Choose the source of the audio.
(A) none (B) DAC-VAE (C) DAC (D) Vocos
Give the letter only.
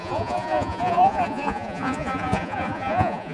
D